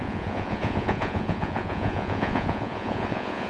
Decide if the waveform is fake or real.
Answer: fake